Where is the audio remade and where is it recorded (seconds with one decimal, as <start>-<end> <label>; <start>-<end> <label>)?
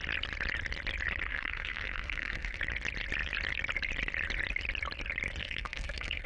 0.0-1.3 recorded; 1.3-2.6 remade; 2.6-5.4 recorded; 5.4-6.3 remade